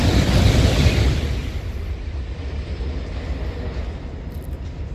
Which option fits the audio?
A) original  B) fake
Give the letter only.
A